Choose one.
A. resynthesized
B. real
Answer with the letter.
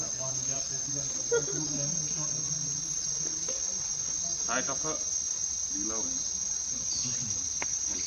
B